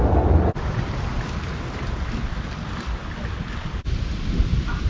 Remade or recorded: recorded